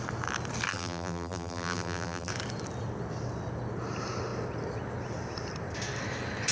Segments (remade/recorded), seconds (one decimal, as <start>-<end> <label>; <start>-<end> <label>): 0.0-0.7 recorded; 0.7-2.3 remade; 2.3-6.5 recorded